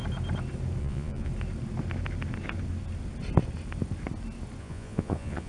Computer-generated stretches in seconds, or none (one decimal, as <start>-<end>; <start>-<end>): 0.8-1.3; 4.6-5.5